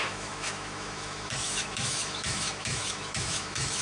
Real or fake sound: fake